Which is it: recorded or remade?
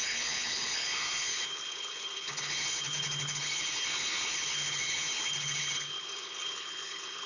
remade